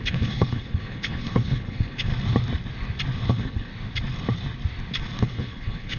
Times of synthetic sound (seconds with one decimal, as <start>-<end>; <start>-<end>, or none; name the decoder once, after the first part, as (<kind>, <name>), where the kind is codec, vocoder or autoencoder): 0.0-2.1 (codec, HILCodec); 3.3-3.7; 5.2-6.0